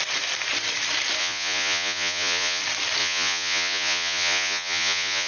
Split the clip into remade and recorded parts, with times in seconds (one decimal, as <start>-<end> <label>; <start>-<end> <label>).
0.0-1.2 recorded; 1.2-2.6 remade; 2.6-3.0 recorded; 3.0-5.3 remade